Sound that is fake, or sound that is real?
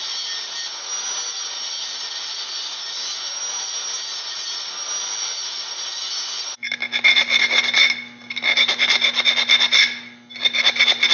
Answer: real